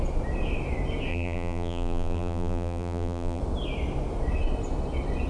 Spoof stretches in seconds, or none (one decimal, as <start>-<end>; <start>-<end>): 1.1-3.4

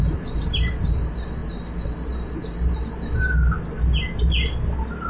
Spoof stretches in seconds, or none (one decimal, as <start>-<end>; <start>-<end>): none

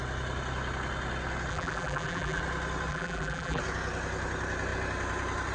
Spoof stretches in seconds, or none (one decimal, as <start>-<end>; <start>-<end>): 1.5-2.4; 2.9-3.6

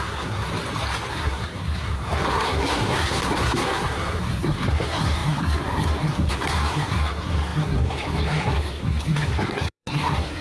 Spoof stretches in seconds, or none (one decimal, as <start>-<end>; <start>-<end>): 0.0-0.5; 1.1-10.4

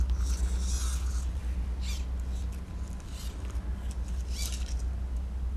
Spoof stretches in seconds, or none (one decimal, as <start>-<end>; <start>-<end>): none

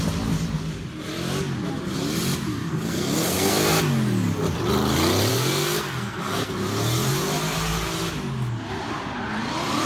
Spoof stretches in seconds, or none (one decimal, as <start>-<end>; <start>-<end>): 2.5-3.8; 5.3-6.5

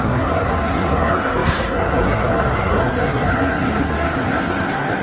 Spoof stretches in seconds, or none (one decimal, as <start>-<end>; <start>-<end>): 0.0-5.0